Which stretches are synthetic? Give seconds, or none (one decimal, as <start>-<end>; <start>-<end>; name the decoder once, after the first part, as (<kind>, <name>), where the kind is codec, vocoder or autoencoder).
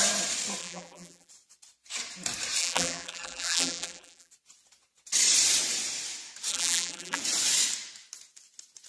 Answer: 0.6-1.3 (vocoder, BigVGAN v2); 2.6-4.3; 6.5-7.2